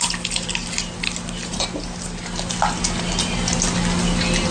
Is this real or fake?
real